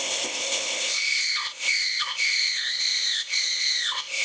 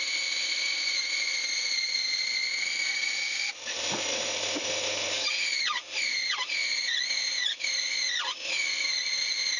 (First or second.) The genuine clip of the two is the second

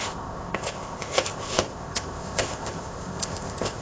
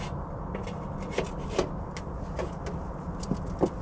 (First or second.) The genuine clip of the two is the second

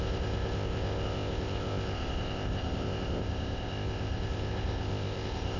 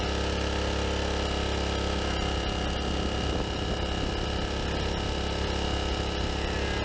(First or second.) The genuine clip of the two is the second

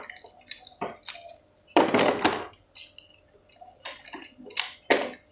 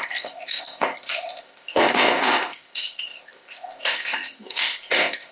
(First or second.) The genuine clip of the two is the first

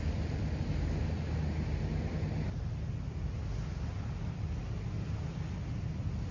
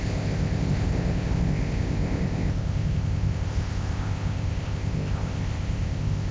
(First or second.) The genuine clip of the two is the first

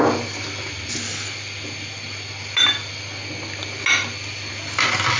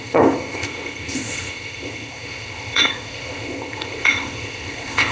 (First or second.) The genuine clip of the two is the first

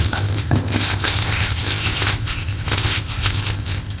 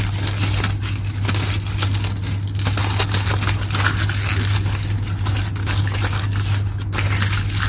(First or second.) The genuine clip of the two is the second